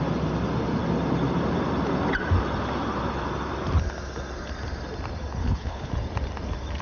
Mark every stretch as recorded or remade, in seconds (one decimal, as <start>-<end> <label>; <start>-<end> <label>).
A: 0.0-5.4 recorded; 5.4-5.9 remade; 5.9-6.8 recorded